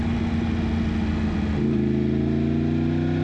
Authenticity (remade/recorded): recorded